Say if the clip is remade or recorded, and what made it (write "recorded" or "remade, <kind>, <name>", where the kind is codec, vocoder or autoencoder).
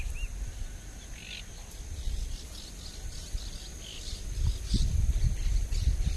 recorded